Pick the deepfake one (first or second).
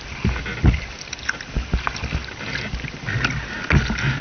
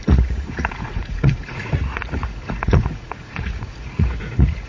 second